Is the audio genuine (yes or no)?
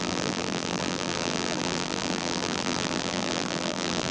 no